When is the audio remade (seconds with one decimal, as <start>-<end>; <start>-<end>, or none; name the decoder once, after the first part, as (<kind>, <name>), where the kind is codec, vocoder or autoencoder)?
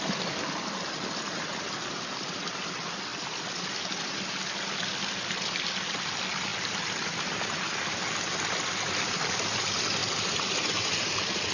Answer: none